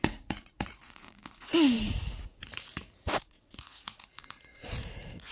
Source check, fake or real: fake